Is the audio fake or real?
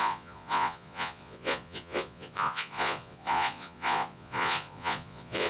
fake